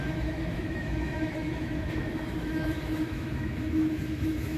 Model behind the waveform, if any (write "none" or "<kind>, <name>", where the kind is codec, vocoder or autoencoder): autoencoder, DAC-VAE